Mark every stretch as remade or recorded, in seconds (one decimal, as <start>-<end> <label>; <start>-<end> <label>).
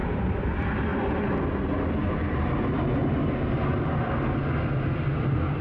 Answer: 0.0-0.5 remade; 0.5-3.0 recorded; 3.0-3.7 remade; 3.7-5.6 recorded